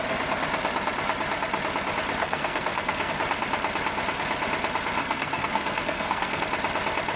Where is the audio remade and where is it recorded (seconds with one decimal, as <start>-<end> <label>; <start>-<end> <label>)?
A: 0.0-2.2 recorded; 2.2-3.1 remade; 3.1-5.0 recorded; 5.0-6.4 remade; 6.4-7.2 recorded